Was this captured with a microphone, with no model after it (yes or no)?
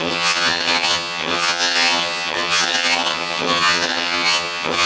no